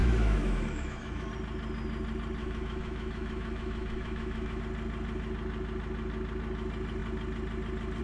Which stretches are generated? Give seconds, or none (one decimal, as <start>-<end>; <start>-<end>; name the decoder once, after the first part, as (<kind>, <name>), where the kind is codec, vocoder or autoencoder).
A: 0.0-1.3 (autoencoder, DAC-VAE); 2.4-4.6